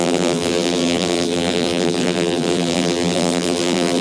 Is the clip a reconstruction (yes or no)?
yes